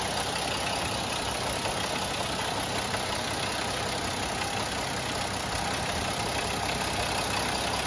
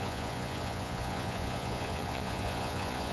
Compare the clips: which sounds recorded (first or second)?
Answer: first